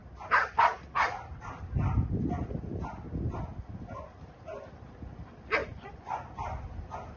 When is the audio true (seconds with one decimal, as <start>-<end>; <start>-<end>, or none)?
0.0-5.6; 6.2-7.2